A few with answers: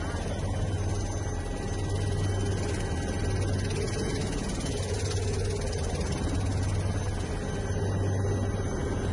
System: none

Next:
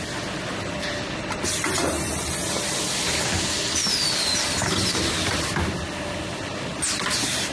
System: none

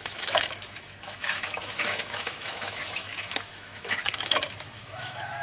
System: autoencoder, DAC-VAE